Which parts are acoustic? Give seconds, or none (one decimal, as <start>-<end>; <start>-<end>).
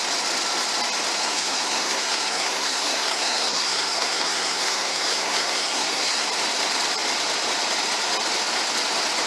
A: 0.0-1.2; 6.3-9.3